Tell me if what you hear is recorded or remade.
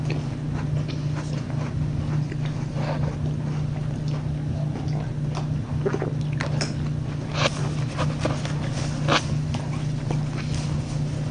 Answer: recorded